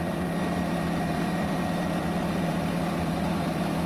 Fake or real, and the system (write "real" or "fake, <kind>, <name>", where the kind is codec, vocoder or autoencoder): fake, vocoder, BigVGAN v2